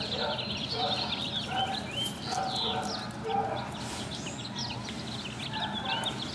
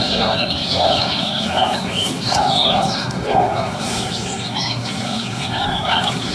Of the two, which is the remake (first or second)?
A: second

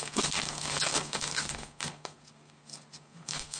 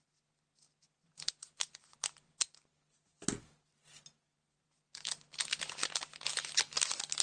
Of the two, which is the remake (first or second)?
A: first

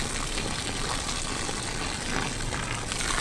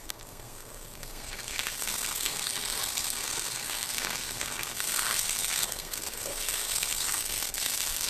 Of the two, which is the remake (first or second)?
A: second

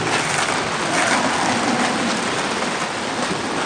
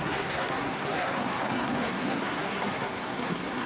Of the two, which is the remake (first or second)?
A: second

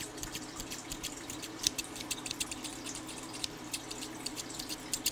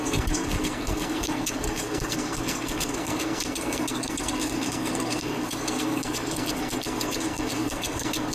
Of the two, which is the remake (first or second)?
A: second